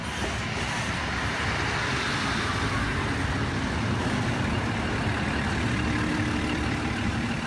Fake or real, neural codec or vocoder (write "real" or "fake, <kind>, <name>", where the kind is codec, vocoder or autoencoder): real